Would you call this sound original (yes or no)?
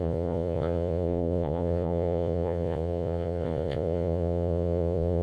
no